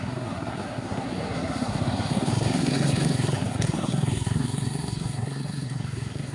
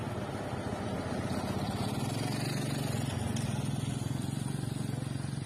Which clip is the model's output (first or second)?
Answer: first